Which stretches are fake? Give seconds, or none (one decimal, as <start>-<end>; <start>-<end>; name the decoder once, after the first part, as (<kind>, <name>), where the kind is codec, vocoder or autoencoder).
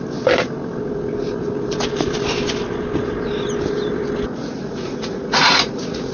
4.4-6.1 (vocoder, Vocos)